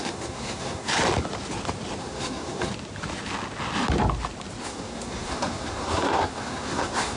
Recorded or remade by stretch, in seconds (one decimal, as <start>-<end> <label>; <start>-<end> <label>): 0.0-0.9 remade; 0.9-2.0 recorded; 2.0-2.7 remade; 2.7-4.6 recorded; 4.6-7.2 remade